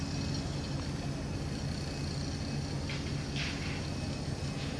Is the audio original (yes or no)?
yes